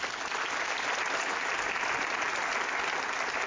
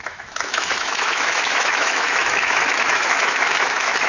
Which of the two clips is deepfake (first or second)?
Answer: second